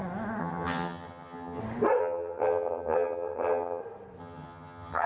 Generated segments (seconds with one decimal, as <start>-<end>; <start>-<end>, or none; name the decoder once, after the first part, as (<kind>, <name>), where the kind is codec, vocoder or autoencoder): 0.4-1.6 (vocoder, HiFi-GAN); 2.0-3.8; 4.2-5.1